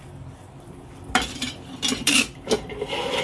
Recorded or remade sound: remade